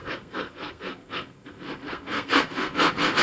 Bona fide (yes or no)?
no